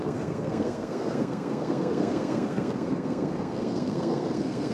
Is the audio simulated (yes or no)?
yes